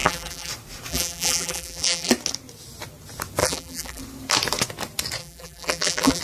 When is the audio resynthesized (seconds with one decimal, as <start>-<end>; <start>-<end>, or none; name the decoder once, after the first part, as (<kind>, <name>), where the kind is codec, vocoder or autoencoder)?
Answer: 0.0-0.5 (vocoder, BigVGAN v2); 0.9-2.1; 3.4-4.0; 5.2-6.2